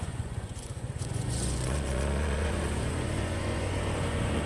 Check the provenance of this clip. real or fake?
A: fake